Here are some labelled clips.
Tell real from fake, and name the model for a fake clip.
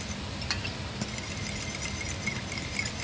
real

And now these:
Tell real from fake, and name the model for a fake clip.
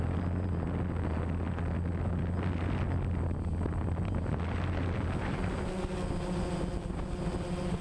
real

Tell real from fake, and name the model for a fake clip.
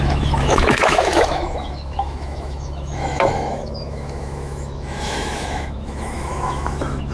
fake, autoencoder, DAC-VAE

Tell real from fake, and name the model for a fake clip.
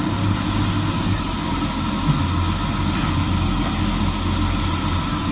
real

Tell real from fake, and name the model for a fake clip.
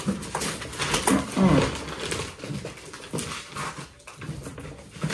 real